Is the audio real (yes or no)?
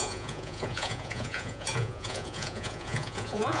no